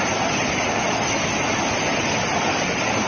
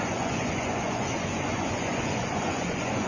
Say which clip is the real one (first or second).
first